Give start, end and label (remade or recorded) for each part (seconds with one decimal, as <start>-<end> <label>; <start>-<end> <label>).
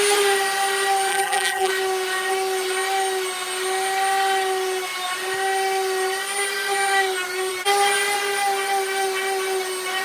0.0-1.1 recorded; 1.1-1.7 remade; 1.7-10.0 recorded